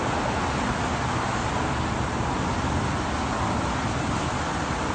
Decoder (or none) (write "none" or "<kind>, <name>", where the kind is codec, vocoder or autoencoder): none